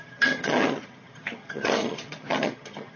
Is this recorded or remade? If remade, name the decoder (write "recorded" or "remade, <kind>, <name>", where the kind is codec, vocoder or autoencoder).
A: remade, vocoder, HiFi-GAN